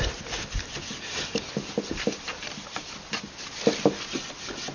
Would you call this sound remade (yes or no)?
no